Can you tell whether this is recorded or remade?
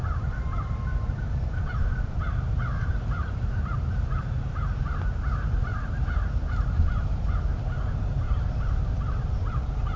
remade